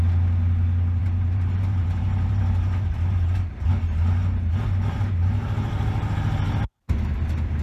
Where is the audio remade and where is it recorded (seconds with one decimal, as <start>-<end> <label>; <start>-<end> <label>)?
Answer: 0.0-1.0 recorded; 1.0-3.7 remade; 3.7-7.6 recorded